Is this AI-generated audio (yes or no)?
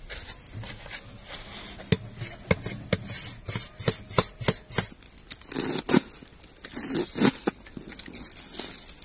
no